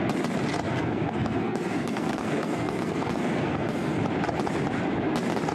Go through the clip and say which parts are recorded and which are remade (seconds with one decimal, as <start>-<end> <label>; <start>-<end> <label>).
0.0-0.7 recorded; 0.7-4.0 remade; 4.0-5.5 recorded